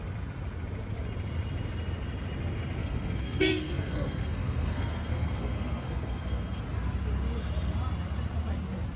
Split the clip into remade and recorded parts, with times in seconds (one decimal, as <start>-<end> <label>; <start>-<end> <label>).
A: 0.0-2.8 recorded; 2.8-6.6 remade; 6.6-9.0 recorded